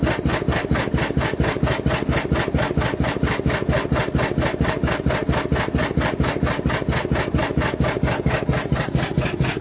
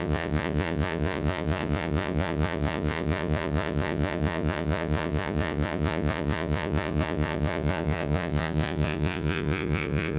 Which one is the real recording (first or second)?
first